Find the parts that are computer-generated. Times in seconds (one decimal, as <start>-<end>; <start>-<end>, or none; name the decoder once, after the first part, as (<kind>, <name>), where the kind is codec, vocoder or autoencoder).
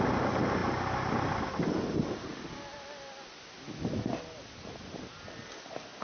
none